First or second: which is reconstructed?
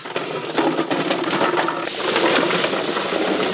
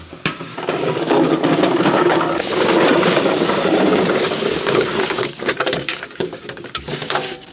second